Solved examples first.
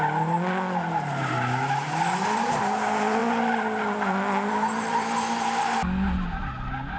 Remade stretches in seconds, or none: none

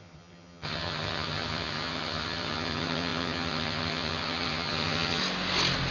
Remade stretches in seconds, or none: 0.0-5.2 (vocoder, HiFi-GAN)

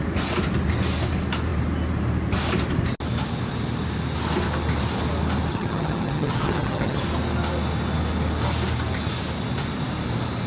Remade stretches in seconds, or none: 5.5-7.1 (vocoder, HiFi-GAN)

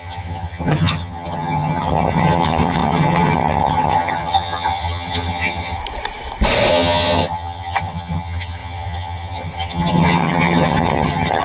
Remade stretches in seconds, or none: 0.0-5.8 (vocoder, HiFi-GAN); 6.7-11.4

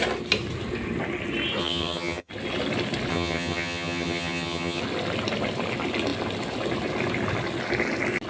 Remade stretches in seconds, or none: 1.6-2.3 (vocoder, HiFi-GAN); 3.1-4.8

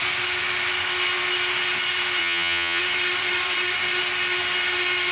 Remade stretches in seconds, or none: 2.2-2.8 (vocoder, HiFi-GAN)